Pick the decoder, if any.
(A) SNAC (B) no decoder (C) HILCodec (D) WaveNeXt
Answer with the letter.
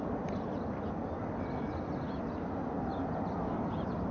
B